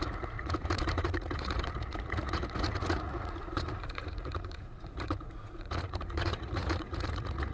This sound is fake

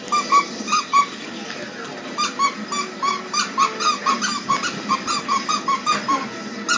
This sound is real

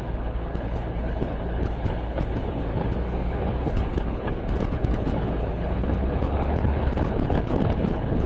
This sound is fake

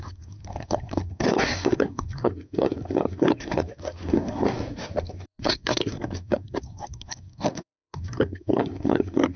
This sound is fake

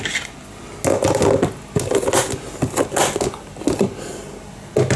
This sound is real